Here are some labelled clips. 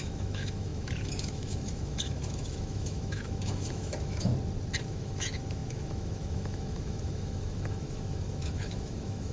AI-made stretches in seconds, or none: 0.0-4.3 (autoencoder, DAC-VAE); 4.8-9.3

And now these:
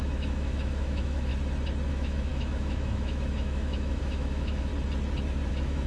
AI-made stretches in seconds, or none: 0.0-1.3 (autoencoder, DAC-VAE); 1.9-4.7; 5.5-5.9

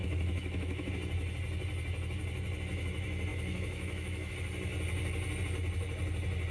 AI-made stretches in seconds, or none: 0.0-0.9 (autoencoder, DAC-VAE); 3.3-4.3

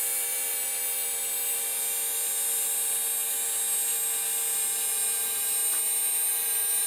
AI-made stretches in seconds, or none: none

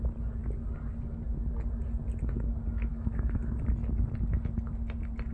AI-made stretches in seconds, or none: 2.9-3.6 (autoencoder, DAC-VAE)